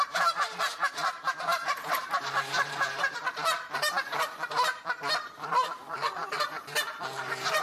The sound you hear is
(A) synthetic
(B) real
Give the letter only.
A